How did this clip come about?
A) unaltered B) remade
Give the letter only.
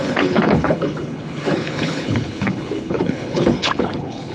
B